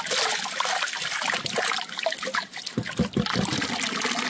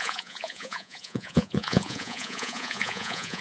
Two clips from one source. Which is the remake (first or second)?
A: second